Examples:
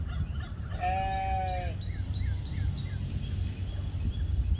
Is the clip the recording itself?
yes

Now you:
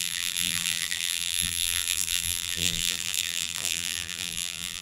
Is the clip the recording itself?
no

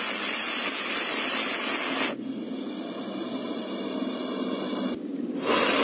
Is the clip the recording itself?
yes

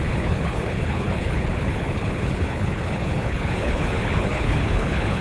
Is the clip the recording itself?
no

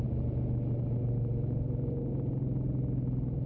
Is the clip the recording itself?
yes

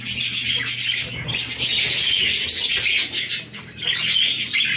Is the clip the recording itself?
yes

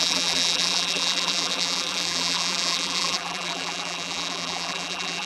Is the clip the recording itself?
no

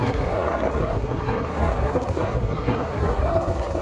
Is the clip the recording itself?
no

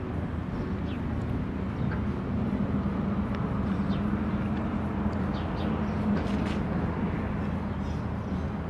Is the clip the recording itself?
yes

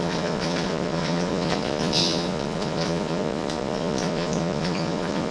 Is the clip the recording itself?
no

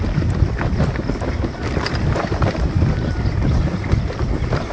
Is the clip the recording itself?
no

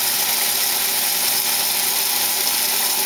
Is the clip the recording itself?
yes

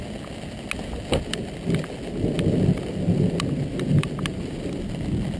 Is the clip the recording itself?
yes